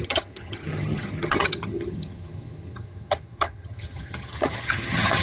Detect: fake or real fake